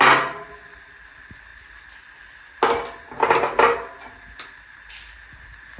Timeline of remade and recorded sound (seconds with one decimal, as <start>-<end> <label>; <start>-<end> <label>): 0.0-5.8 recorded